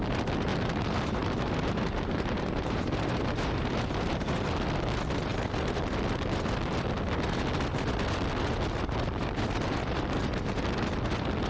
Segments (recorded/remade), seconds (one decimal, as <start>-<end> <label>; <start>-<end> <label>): 0.0-0.5 recorded; 0.5-4.5 remade; 4.5-11.5 recorded